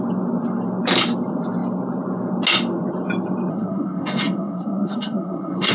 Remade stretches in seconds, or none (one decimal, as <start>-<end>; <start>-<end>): 3.5-5.7

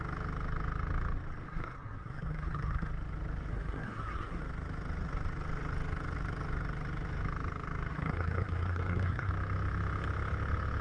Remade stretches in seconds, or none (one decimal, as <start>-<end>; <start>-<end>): 1.5-2.9; 3.5-4.4; 7.9-9.3

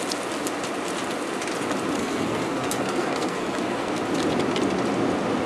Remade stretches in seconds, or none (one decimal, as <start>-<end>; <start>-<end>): 2.0-3.9

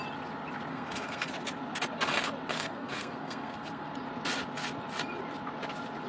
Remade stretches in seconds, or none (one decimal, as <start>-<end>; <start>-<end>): 0.7-1.3; 2.5-3.9

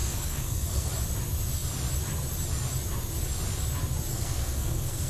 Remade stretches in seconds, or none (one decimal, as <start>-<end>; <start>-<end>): 0.0-0.9; 4.1-5.1